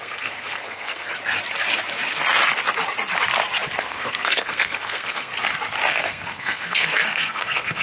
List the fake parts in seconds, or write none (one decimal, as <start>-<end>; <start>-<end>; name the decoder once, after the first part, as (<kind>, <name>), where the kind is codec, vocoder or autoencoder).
0.0-1.1 (codec, SNAC); 3.8-5.3; 5.9-7.8